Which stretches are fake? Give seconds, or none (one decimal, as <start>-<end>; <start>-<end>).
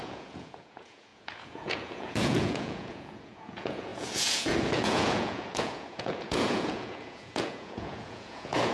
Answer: 0.0-8.7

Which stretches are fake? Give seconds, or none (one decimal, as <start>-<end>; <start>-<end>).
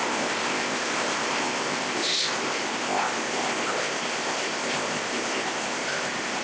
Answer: 0.0-6.4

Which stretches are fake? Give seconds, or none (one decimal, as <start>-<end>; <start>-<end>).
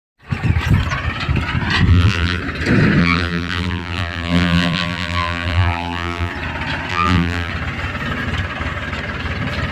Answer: 1.9-2.4; 3.0-6.3; 6.9-7.5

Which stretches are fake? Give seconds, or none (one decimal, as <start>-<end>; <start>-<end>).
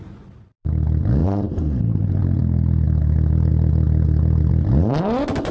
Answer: 1.2-1.8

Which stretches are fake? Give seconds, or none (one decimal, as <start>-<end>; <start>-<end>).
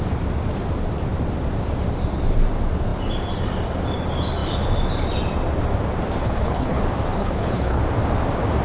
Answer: 6.2-6.8; 7.2-7.8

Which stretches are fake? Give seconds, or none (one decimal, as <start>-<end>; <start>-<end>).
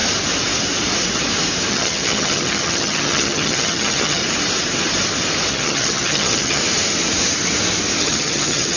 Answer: 1.7-4.2; 5.5-6.6; 8.0-8.8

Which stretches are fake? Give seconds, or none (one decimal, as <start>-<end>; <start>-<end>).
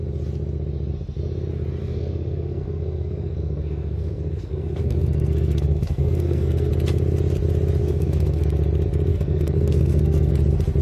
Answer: 1.8-6.7; 7.8-8.4; 9.1-10.3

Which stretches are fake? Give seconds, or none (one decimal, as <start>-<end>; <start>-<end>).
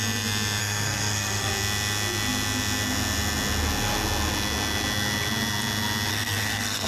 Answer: 0.6-1.5; 6.1-6.9